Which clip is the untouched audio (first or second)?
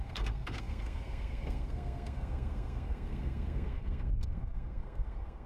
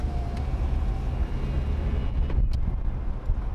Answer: second